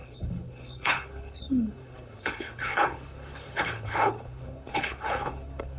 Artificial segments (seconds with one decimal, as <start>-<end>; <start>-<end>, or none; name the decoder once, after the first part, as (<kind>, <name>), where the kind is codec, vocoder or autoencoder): 0.0-5.8 (codec, HILCodec)